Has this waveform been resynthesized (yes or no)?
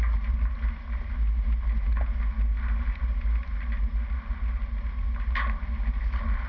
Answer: no